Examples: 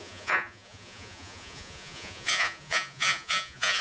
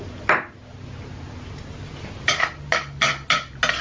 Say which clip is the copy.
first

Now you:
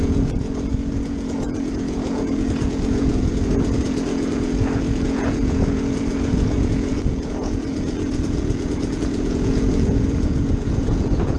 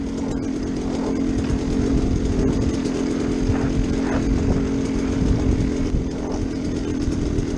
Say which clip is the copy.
first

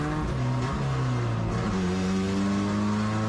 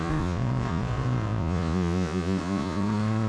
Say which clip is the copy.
second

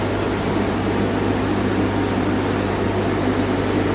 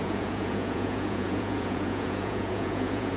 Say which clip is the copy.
second